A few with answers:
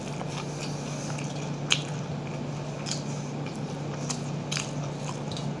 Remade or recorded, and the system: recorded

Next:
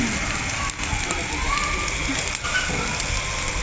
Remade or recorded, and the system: recorded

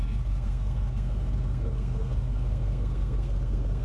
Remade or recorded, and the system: remade, codec, SNAC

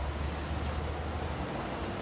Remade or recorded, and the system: recorded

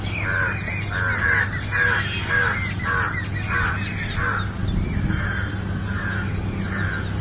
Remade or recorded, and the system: recorded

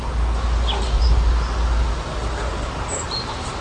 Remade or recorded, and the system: recorded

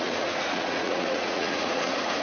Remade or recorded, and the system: remade, vocoder, Vocos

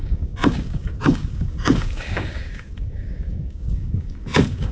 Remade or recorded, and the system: remade, codec, DAC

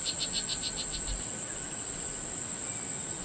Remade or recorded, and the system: recorded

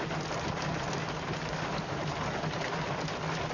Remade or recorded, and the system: recorded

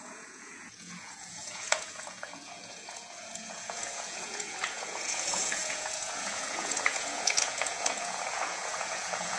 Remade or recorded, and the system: remade, vocoder, Vocos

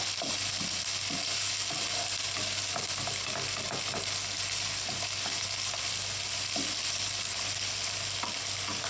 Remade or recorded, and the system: recorded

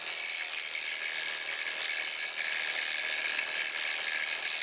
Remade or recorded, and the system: recorded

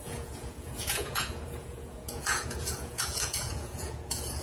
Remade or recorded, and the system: remade, vocoder, Vocos